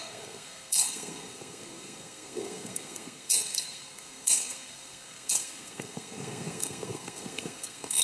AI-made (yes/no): yes